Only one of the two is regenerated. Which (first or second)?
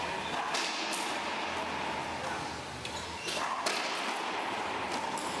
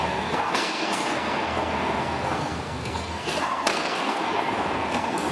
second